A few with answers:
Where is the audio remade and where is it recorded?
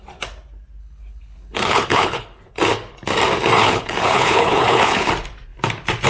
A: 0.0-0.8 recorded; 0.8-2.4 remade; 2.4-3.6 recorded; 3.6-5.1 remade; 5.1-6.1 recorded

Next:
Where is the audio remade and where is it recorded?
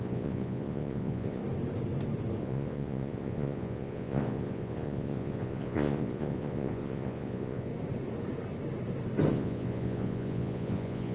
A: 0.0-1.4 remade; 1.4-2.4 recorded; 2.4-7.7 remade; 7.7-9.3 recorded; 9.3-11.1 remade